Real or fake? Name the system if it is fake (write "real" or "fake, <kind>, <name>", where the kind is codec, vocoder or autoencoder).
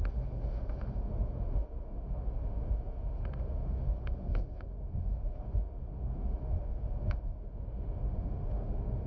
fake, autoencoder, DAC-VAE